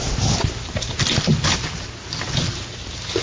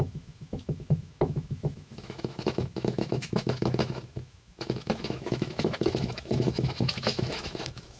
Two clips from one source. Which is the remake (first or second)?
second